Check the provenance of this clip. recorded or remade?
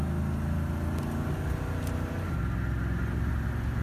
recorded